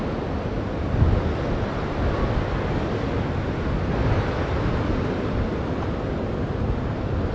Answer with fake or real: real